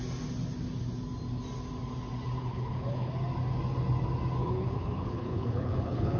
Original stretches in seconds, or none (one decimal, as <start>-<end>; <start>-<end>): 0.0-2.4; 3.1-4.4